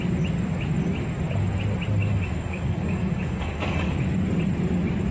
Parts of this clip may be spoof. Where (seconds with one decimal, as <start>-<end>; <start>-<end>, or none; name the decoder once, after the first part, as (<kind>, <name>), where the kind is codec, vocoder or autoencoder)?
2.0-3.9 (codec, DAC)